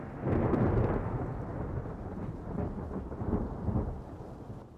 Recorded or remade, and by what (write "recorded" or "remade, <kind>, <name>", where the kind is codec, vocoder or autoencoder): recorded